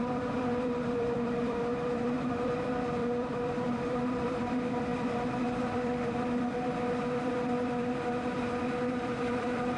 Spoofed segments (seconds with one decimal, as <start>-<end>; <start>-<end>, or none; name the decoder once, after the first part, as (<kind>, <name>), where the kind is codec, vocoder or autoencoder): 0.0-9.8 (vocoder, BigVGAN v2)